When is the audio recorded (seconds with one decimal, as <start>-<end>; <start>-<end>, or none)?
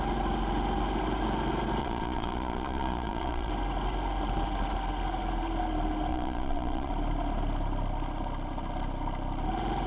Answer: 0.0-1.8; 3.5-6.1; 6.9-9.9